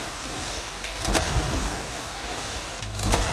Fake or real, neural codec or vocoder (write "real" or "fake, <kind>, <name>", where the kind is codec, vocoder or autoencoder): fake, codec, DAC